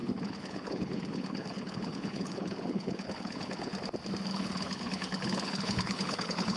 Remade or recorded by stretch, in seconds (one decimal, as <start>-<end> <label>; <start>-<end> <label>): 0.0-3.7 remade; 3.7-4.3 recorded; 4.3-6.6 remade